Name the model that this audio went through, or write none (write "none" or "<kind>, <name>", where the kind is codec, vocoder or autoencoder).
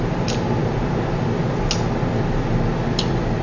none